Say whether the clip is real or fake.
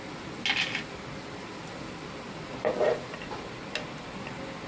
real